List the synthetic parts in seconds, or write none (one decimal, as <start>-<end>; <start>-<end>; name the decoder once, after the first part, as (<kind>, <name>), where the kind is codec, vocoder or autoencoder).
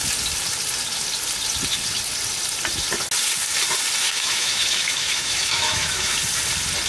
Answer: 4.0-6.2 (autoencoder, DAC-VAE)